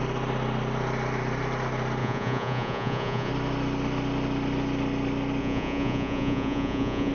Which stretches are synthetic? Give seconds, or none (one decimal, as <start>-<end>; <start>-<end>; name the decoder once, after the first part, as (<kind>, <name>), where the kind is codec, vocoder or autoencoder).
2.0-3.3 (vocoder, Vocos); 5.4-7.1